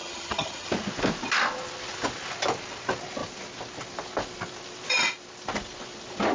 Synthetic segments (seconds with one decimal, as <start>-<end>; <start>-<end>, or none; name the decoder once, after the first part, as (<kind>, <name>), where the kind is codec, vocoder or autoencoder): 0.0-0.7 (vocoder, HiFi-GAN)